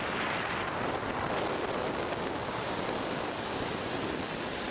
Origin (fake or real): real